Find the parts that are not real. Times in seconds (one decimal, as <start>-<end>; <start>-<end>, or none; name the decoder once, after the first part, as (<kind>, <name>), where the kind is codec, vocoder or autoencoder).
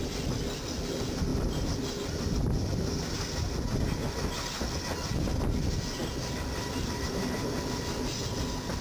none